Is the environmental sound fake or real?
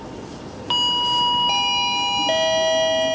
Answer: real